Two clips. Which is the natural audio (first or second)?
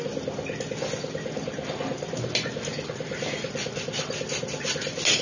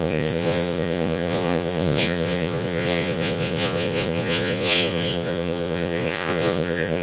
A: first